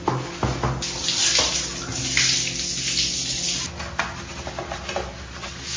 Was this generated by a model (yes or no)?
no